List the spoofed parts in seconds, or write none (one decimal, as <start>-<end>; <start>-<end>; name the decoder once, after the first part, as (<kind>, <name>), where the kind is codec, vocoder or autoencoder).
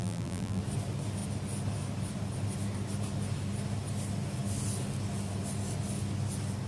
0.0-0.6 (vocoder, BigVGAN v2)